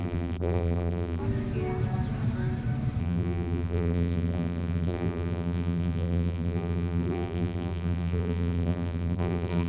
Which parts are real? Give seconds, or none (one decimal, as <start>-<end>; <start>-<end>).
1.2-3.0